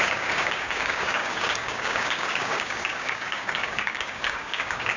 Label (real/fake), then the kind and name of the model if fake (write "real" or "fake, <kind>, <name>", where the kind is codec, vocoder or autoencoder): fake, codec, DAC